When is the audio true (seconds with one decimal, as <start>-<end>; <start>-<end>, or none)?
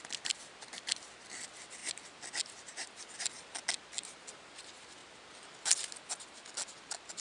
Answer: 0.0-1.8; 3.3-5.0; 5.5-7.2